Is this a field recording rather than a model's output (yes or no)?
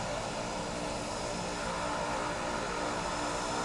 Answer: yes